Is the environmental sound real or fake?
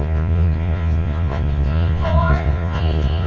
fake